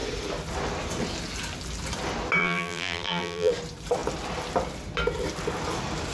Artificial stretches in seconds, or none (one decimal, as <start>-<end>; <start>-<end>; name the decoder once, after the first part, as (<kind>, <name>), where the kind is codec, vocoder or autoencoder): 2.4-3.5 (vocoder, BigVGAN v2)